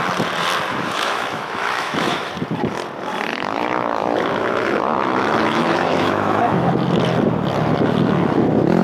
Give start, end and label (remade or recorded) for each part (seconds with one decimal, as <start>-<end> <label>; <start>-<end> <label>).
0.0-0.7 recorded; 0.7-2.3 remade; 2.3-3.3 recorded; 3.3-6.7 remade; 6.7-8.8 recorded

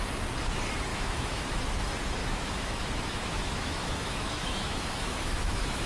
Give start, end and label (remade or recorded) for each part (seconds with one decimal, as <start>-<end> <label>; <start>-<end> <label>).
0.0-0.9 recorded; 0.9-1.6 remade; 1.6-2.2 recorded; 2.2-5.9 remade

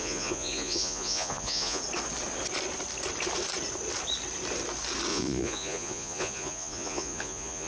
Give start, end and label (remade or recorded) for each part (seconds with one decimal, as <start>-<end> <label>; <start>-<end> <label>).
0.0-1.8 remade; 1.8-5.1 recorded; 5.1-7.7 remade

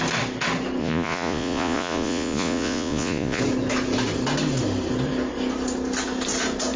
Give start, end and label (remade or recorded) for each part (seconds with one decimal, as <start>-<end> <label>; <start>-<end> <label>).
0.0-0.8 recorded; 0.8-3.4 remade; 3.4-6.8 recorded

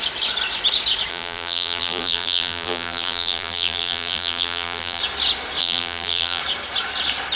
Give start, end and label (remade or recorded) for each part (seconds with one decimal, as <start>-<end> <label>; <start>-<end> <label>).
0.0-1.1 recorded; 1.1-5.0 remade; 5.0-5.6 recorded; 5.6-6.4 remade; 6.4-7.4 recorded

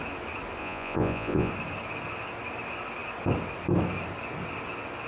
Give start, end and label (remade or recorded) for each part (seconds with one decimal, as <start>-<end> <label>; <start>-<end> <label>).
0.0-0.6 recorded; 0.6-1.5 remade; 1.5-5.1 recorded

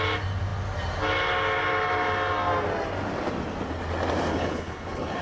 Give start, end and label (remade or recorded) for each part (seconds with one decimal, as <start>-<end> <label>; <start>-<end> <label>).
0.0-4.3 recorded; 4.3-5.2 remade